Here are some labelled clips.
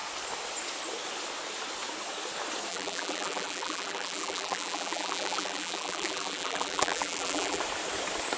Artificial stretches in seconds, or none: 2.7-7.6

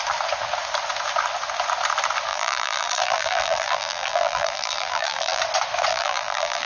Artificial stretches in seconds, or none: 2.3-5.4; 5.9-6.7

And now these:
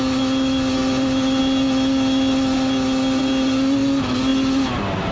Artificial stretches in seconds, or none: none